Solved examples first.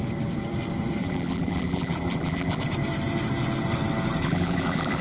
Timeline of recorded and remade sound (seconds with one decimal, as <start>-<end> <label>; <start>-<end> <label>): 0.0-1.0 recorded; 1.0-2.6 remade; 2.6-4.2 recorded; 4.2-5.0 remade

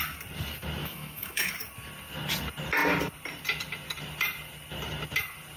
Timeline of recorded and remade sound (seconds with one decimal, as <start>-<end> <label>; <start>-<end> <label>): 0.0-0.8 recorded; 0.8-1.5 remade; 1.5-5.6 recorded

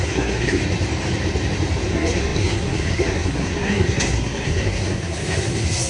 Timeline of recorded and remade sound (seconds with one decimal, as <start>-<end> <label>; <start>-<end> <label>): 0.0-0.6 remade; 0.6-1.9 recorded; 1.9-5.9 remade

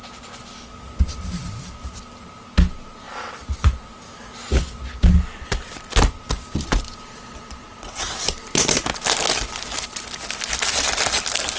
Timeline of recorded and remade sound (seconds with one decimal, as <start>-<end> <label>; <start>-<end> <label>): 0.0-7.6 recorded; 7.6-8.2 remade; 8.2-11.6 recorded

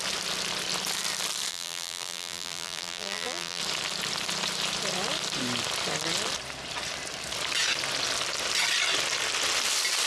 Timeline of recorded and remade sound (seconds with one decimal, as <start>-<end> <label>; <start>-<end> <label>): 0.0-1.5 recorded; 1.5-3.6 remade; 3.6-10.1 recorded

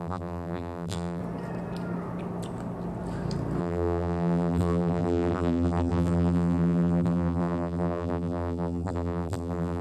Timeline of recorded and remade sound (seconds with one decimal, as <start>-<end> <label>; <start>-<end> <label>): 0.0-1.2 remade; 1.2-3.6 recorded; 3.6-9.8 remade

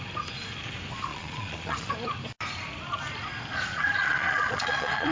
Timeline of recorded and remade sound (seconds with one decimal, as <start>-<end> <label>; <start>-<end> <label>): 0.0-1.1 recorded; 1.1-1.9 remade; 1.9-3.7 recorded; 3.7-5.1 remade

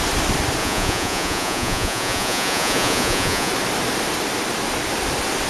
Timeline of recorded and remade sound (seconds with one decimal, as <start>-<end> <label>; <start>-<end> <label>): 0.0-0.6 recorded; 0.6-3.5 remade; 3.5-5.5 recorded